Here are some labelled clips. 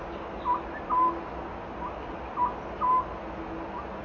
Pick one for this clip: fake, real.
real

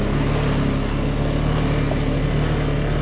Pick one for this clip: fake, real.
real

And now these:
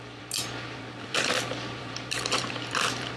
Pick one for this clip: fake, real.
fake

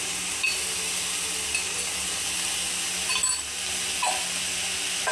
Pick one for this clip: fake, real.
real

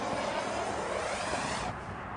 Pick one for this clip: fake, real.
fake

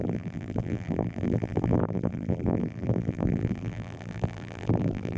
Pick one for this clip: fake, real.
fake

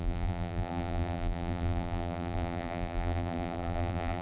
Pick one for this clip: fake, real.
fake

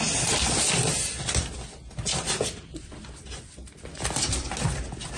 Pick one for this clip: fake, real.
real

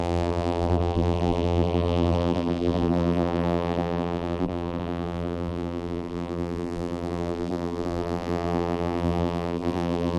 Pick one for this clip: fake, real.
fake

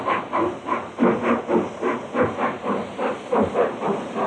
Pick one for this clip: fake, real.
real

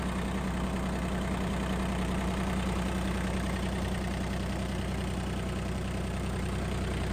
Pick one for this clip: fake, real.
fake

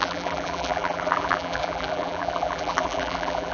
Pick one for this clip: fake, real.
fake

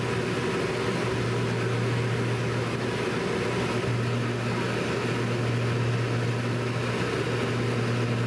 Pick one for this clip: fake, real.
real